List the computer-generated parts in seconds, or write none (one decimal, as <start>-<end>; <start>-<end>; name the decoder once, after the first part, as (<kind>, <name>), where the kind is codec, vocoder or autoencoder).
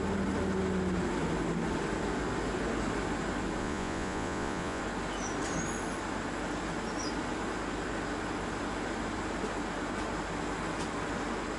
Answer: 3.6-4.8 (vocoder, Vocos)